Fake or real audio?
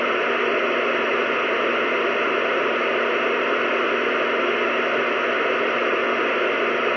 real